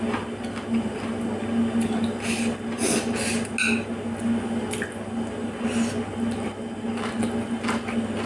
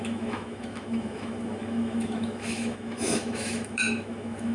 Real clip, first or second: first